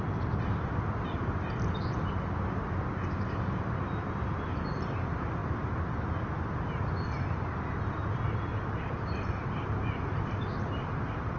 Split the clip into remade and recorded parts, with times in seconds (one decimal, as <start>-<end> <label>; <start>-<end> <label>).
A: 0.0-11.4 recorded

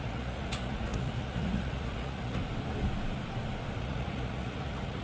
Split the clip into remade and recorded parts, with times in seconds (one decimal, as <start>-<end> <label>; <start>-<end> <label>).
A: 0.0-2.4 remade; 2.4-3.8 recorded; 3.8-5.0 remade